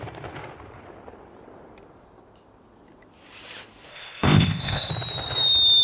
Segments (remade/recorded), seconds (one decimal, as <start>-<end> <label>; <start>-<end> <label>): 0.0-3.9 recorded; 3.9-4.9 remade; 4.9-5.8 recorded